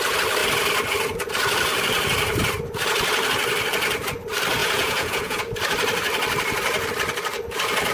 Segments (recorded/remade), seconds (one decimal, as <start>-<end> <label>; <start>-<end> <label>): 0.0-4.6 recorded; 4.6-5.5 remade; 5.5-7.9 recorded